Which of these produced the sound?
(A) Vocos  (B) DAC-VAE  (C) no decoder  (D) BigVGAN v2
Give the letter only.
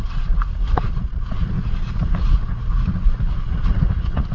A